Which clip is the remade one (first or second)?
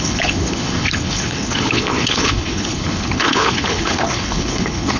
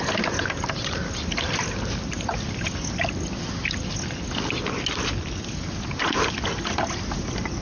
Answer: first